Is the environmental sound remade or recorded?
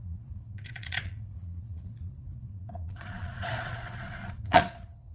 remade